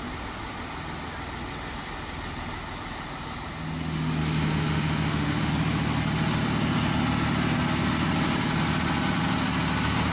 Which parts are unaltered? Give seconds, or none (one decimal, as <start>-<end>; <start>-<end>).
0.0-4.2; 5.5-10.1

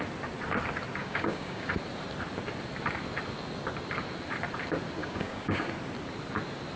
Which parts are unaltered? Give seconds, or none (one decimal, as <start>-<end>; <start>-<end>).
0.0-1.0; 1.7-5.0; 5.7-6.8